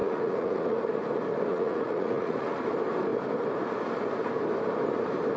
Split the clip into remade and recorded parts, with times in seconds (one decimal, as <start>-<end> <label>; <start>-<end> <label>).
0.0-0.8 remade; 0.8-1.5 recorded; 1.5-2.6 remade; 2.6-5.4 recorded